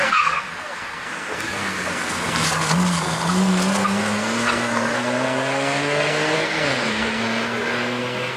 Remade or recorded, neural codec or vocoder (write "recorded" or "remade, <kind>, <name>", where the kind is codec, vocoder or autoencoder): remade, codec, SNAC